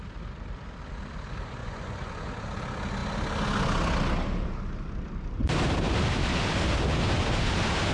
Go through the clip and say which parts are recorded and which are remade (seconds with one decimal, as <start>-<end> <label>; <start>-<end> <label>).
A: 0.0-1.6 recorded; 1.6-2.3 remade; 2.3-7.9 recorded